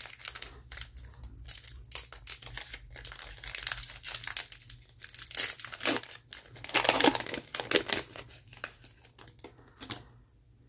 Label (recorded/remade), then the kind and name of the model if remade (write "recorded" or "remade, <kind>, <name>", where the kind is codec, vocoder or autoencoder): recorded